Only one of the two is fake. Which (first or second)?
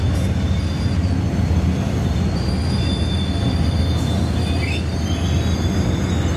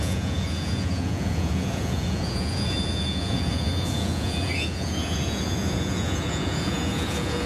second